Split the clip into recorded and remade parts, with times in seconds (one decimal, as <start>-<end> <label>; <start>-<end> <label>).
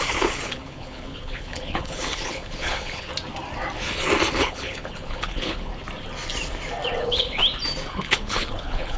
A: 0.0-3.1 remade; 3.1-4.3 recorded; 4.3-5.7 remade; 5.7-7.0 recorded; 7.0-7.4 remade; 7.4-7.9 recorded; 7.9-9.0 remade